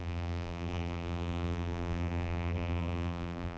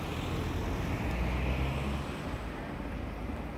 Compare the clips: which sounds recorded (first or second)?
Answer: second